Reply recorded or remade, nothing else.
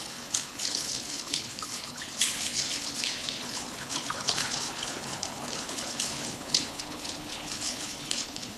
remade